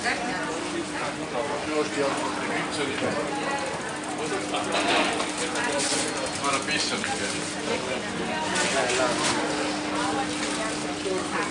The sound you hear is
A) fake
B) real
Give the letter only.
B